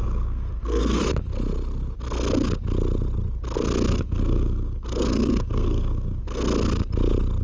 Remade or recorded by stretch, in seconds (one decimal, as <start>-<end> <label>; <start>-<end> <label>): 0.0-1.0 remade; 1.0-3.9 recorded; 3.9-6.4 remade; 6.4-7.4 recorded

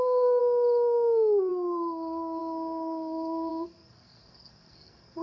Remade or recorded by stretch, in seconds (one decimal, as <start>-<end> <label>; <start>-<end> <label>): 0.0-0.4 remade; 0.4-1.5 recorded; 1.5-5.2 remade

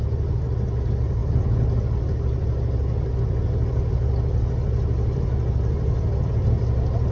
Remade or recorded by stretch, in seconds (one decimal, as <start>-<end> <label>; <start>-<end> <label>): 0.0-7.1 recorded

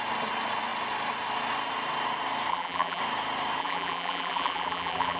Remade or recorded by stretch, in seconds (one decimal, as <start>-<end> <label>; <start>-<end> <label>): 0.0-2.5 recorded; 2.5-3.0 remade; 3.0-3.6 recorded; 3.6-5.2 remade

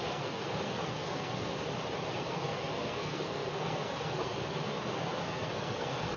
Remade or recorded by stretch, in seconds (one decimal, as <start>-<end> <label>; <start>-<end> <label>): 0.0-1.5 remade; 1.5-2.1 recorded; 2.1-6.2 remade

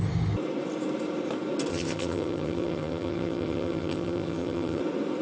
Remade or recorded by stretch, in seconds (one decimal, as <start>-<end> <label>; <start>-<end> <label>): 0.0-1.7 recorded; 1.7-4.8 remade; 4.8-5.2 recorded

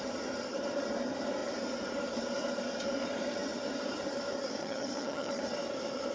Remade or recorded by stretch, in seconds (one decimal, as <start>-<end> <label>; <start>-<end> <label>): 0.0-4.6 recorded; 4.6-5.4 remade; 5.4-6.1 recorded